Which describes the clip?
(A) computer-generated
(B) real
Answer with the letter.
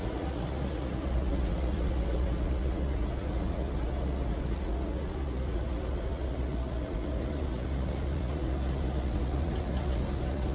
A